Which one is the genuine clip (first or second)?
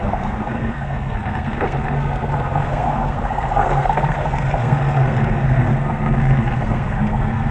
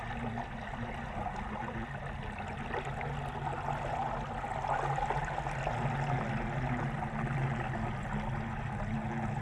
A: second